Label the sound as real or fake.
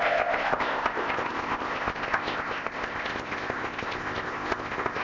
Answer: fake